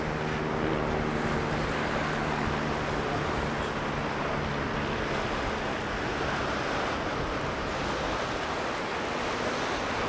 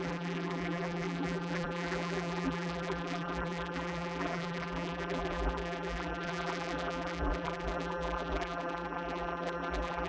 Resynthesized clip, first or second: second